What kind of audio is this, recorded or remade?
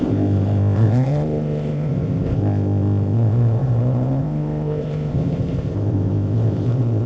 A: remade